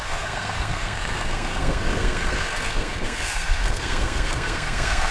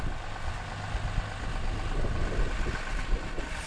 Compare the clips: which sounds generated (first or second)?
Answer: first